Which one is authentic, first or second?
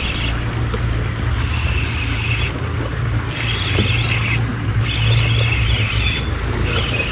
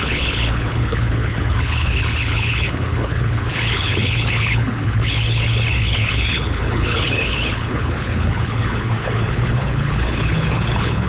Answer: first